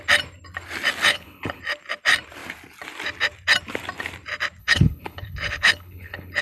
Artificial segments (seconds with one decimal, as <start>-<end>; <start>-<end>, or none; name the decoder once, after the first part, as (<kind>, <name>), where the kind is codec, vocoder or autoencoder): 1.1-1.6 (codec, HILCodec); 4.6-6.4

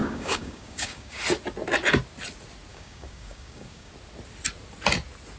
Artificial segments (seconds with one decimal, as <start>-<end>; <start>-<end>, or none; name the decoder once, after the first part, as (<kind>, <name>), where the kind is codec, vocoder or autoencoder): 0.0-1.2 (codec, DAC); 2.7-3.9

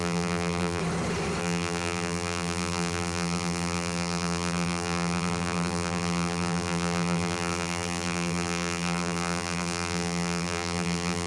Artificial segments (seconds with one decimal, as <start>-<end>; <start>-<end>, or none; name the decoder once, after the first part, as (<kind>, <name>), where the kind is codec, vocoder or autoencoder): 0.0-0.8 (vocoder, BigVGAN v2); 1.4-11.3

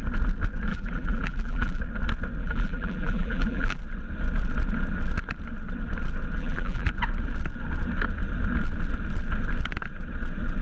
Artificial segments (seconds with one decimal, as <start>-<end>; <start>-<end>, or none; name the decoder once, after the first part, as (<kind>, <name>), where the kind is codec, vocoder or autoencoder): 0.7-1.8 (vocoder, BigVGAN v2); 2.4-3.8; 6.4-6.9

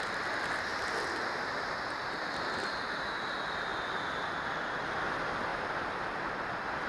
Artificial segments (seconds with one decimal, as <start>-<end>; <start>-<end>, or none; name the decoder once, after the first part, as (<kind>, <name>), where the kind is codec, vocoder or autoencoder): none

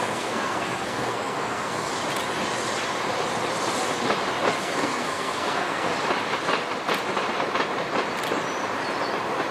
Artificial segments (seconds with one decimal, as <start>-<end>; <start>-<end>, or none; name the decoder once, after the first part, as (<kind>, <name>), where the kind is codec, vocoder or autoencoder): 0.0-1.9 (codec, SNAC); 4.6-5.9

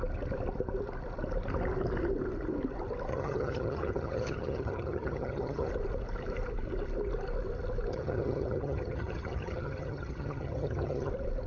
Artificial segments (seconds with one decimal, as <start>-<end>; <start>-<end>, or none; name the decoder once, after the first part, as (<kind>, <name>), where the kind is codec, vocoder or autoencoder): 3.1-5.7 (vocoder, HiFi-GAN); 7.9-11.1

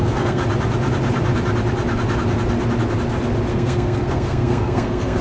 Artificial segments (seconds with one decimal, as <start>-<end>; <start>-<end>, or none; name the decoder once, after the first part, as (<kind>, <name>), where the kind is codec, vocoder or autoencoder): 0.0-0.4 (codec, SNAC); 3.5-5.2